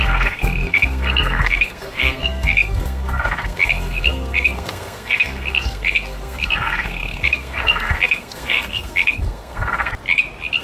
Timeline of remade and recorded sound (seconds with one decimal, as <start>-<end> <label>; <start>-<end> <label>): 0.0-9.9 remade; 9.9-10.6 recorded